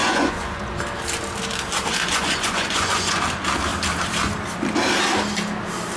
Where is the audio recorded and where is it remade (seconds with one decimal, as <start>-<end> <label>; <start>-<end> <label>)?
0.0-0.8 remade; 0.8-1.9 recorded; 1.9-3.2 remade; 3.2-6.0 recorded